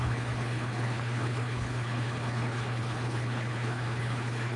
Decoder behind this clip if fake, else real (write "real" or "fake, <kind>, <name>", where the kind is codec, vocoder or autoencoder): fake, codec, HILCodec